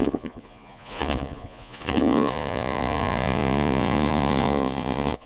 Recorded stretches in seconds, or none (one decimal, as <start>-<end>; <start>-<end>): none